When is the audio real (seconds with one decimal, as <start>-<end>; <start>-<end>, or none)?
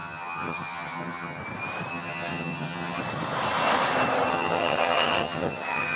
1.4-1.9; 3.0-4.3